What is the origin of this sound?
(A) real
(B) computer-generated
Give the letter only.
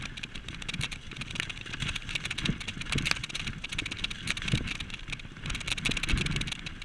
A